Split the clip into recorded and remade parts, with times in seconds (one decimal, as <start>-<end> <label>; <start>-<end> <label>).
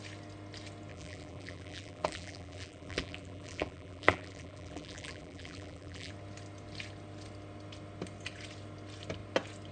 0.0-0.9 recorded; 0.9-6.1 remade; 6.1-9.7 recorded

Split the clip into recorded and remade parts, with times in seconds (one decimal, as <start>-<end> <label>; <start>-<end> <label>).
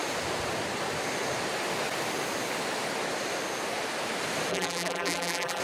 0.0-4.5 recorded; 4.5-5.6 remade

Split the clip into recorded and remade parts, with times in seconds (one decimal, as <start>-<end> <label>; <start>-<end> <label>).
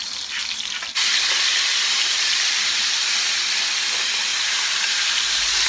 0.0-4.3 recorded; 4.3-5.7 remade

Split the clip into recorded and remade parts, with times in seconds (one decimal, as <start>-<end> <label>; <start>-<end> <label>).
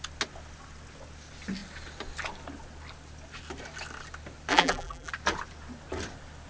0.0-4.5 recorded; 4.5-5.1 remade; 5.1-6.5 recorded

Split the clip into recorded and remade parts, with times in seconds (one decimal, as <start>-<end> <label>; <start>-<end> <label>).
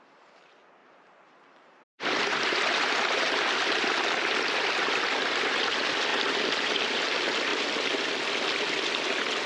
0.0-0.8 recorded; 0.8-3.4 remade; 3.4-6.1 recorded; 6.1-6.8 remade; 6.8-9.5 recorded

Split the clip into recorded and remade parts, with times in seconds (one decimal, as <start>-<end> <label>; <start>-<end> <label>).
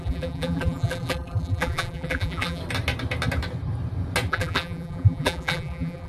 0.0-2.6 remade; 2.6-4.3 recorded; 4.3-6.1 remade